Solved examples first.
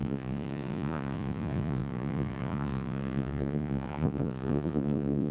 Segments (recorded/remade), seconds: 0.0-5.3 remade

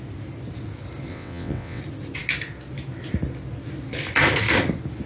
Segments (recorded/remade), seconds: 0.0-1.1 recorded; 1.1-1.8 remade; 1.8-5.1 recorded